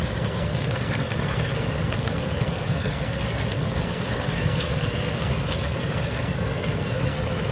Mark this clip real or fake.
fake